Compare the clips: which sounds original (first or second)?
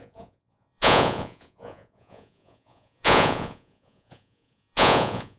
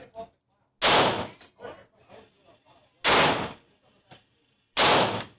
second